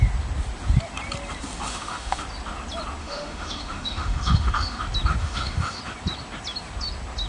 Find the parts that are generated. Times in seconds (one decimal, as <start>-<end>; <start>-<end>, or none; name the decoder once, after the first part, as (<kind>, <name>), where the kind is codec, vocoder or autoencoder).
1.7-2.2 (autoencoder, DAC-VAE); 3.0-4.8; 5.2-5.8